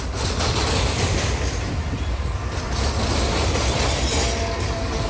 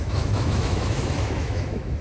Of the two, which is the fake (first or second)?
second